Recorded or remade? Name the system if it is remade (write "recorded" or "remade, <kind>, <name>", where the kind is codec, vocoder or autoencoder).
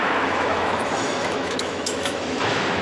remade, autoencoder, DAC-VAE